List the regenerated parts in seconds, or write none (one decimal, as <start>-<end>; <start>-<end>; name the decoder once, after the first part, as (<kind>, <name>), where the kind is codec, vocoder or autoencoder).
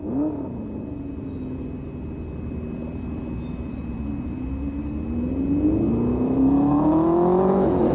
6.1-7.9 (autoencoder, DAC-VAE)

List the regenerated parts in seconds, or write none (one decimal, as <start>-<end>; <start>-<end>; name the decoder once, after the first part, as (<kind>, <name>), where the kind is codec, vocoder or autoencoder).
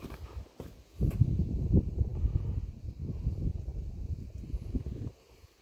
none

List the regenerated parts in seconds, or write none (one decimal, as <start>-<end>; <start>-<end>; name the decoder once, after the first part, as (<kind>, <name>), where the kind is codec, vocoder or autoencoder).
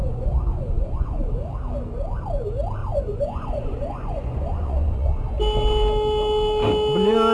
0.0-1.3 (vocoder, Vocos); 2.8-5.4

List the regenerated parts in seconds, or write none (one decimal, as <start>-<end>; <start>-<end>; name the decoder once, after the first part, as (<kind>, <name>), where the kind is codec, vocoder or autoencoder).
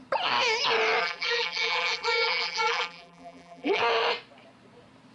1.0-3.8 (vocoder, BigVGAN v2)